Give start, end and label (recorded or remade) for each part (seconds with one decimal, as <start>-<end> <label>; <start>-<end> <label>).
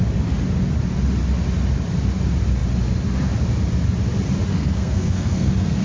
0.0-4.5 recorded; 4.5-5.8 remade